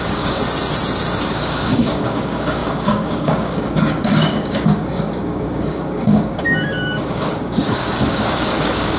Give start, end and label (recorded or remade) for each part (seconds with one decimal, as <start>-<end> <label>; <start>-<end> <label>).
0.0-0.4 remade; 0.4-1.3 recorded; 1.3-9.0 remade